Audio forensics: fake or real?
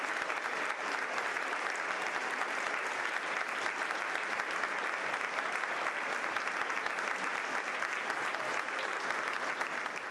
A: real